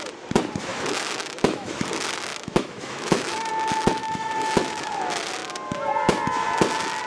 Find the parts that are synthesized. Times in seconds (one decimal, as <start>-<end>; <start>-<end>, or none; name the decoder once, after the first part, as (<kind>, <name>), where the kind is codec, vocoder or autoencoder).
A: 0.7-1.9 (autoencoder, DAC-VAE); 2.3-3.5; 4.0-4.9